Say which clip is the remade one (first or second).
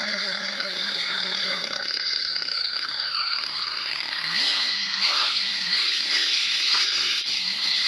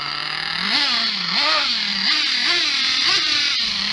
first